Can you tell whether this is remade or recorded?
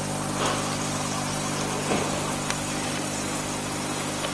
recorded